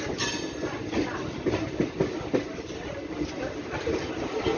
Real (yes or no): yes